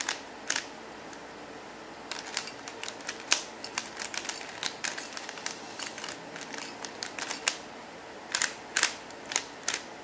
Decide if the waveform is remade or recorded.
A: recorded